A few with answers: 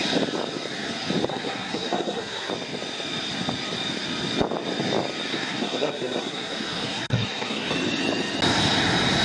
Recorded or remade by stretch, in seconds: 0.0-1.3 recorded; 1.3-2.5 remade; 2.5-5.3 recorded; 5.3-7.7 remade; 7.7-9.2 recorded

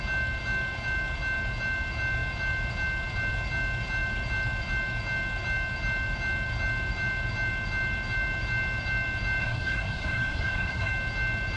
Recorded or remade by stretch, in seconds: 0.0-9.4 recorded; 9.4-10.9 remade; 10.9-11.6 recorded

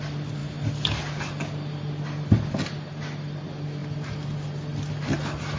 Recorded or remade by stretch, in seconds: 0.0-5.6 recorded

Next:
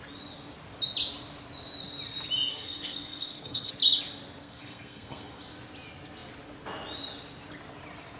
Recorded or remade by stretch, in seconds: 0.0-2.5 recorded; 2.5-3.7 remade; 3.7-4.4 recorded; 4.4-5.4 remade; 5.4-8.2 recorded